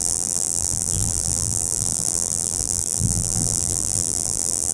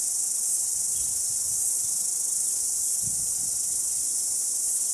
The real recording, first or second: second